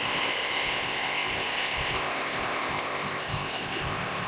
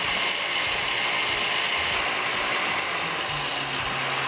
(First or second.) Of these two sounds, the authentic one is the second